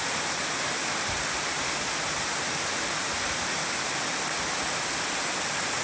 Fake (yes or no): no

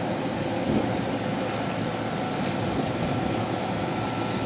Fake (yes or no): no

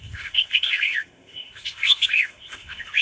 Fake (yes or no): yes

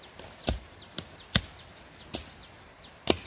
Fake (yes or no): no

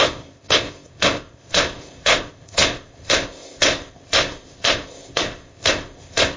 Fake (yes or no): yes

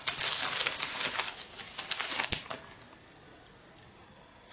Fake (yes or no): no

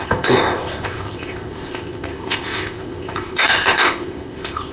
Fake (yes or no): yes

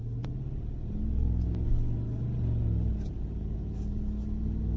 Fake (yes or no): no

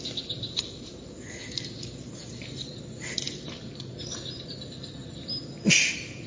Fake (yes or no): no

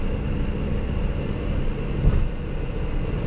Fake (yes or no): no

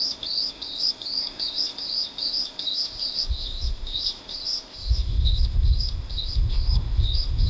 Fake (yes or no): yes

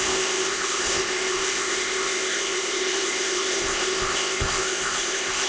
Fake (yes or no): yes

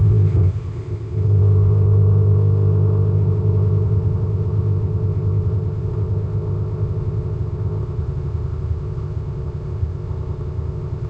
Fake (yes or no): yes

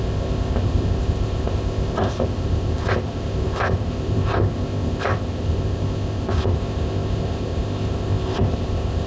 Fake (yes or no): yes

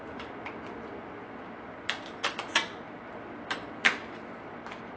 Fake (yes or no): no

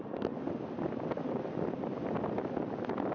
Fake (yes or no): no